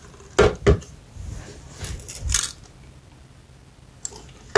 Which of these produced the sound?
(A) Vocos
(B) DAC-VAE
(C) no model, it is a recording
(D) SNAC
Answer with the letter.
C